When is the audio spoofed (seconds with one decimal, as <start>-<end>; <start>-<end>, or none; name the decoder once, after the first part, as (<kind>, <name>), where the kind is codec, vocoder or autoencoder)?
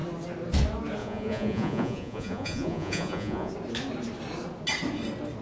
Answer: 1.0-3.5 (vocoder, Vocos)